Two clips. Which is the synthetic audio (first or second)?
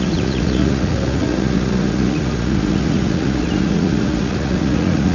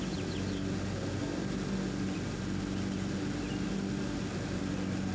first